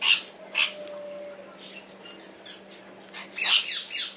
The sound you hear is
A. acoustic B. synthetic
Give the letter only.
A